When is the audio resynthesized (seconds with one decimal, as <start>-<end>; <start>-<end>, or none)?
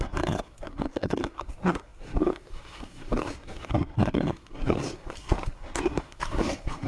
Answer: 0.0-6.9